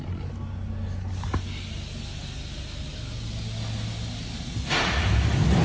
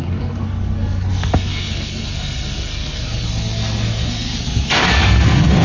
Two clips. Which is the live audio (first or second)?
first